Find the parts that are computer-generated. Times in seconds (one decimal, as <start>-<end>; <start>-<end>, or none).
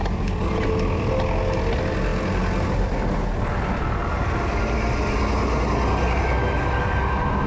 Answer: none